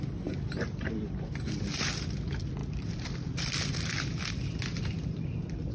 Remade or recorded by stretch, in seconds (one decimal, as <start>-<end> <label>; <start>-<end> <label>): 0.0-2.6 recorded; 2.6-4.3 remade; 4.3-5.7 recorded